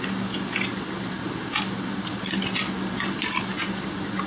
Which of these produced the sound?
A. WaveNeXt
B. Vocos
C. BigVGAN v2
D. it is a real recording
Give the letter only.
D